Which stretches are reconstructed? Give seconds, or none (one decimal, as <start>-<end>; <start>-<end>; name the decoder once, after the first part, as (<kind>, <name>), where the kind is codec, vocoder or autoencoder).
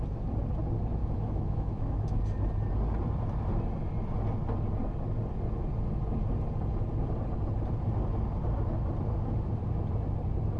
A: 1.0-2.2 (autoencoder, DAC-VAE)